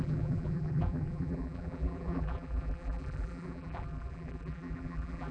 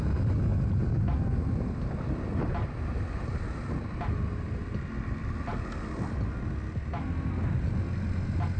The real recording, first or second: second